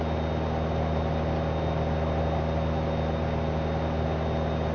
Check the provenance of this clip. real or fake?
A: real